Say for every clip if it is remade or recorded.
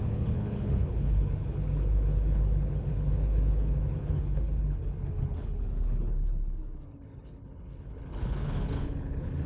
remade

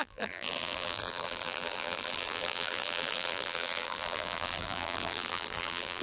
remade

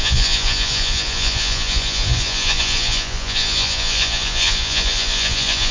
remade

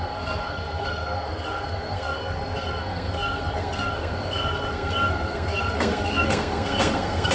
remade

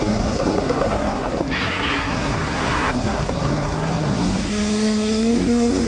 remade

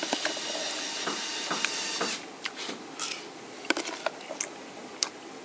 recorded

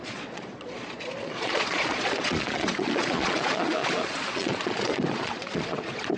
remade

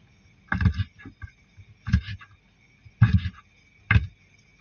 recorded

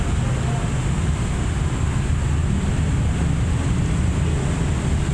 recorded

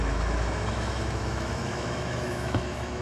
remade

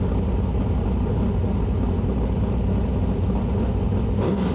recorded